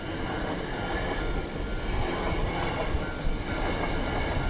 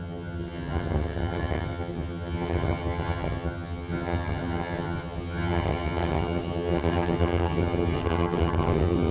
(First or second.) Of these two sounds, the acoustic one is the first